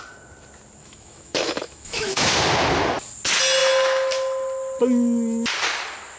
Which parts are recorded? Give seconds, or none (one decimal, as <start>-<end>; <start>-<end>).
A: 0.0-0.8; 2.3-6.2